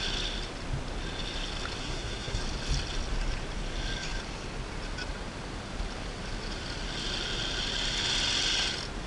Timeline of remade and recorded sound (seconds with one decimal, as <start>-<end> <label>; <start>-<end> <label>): 0.0-1.8 recorded; 1.8-2.4 remade; 2.4-9.1 recorded

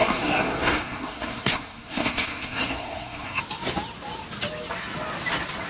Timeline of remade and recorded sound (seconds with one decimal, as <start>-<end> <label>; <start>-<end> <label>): 0.0-3.4 remade; 3.4-5.7 recorded

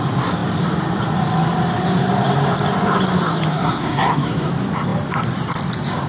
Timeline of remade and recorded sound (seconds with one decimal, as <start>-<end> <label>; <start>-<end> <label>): 0.0-3.5 recorded; 3.5-4.5 remade; 4.5-6.1 recorded

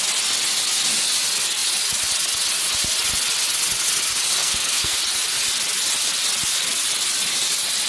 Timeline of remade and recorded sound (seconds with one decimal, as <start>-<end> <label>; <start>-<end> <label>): 0.0-4.4 recorded; 4.4-5.0 remade; 5.0-7.9 recorded

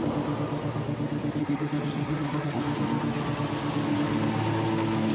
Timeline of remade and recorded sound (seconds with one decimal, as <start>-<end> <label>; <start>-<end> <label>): 0.0-1.4 recorded; 1.4-2.6 remade; 2.6-5.1 recorded

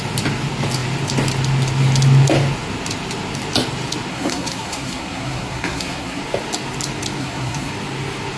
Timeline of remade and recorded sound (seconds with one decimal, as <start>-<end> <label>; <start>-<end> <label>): 0.0-4.1 recorded; 4.1-6.2 remade; 6.2-7.2 recorded; 7.2-7.7 remade; 7.7-8.4 recorded

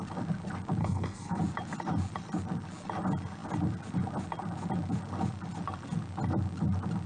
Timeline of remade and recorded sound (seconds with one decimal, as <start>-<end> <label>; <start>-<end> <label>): 0.0-0.8 recorded; 0.8-1.4 remade; 1.4-7.1 recorded

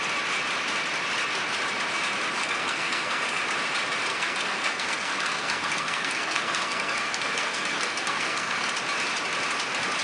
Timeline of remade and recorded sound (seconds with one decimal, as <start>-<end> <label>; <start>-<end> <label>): 0.0-2.4 recorded; 2.4-3.4 remade; 3.4-4.1 recorded; 4.1-8.7 remade; 8.7-10.0 recorded